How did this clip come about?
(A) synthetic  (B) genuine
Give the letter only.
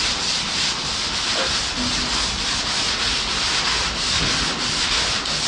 B